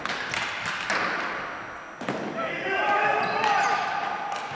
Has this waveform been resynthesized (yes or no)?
no